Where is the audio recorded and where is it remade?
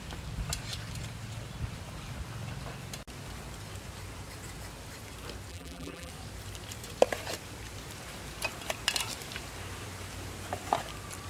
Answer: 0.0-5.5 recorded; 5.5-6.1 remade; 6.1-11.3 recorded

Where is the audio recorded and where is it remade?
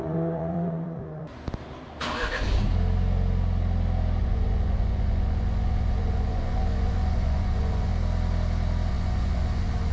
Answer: 0.0-1.3 remade; 1.3-4.2 recorded; 4.2-7.9 remade; 7.9-8.9 recorded; 8.9-9.9 remade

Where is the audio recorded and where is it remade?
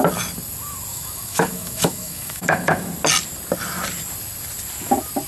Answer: 0.0-0.9 recorded; 0.9-2.9 remade; 2.9-5.3 recorded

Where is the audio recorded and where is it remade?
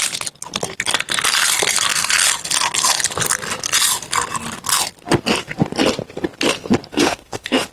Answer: 0.0-6.9 recorded; 6.9-7.7 remade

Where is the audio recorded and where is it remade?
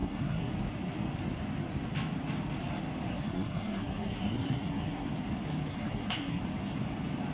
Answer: 0.0-0.5 remade; 0.5-3.1 recorded; 3.1-5.1 remade; 5.1-5.7 recorded; 5.7-6.4 remade; 6.4-7.3 recorded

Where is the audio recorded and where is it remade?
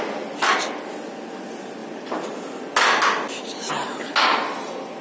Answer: 0.0-5.0 recorded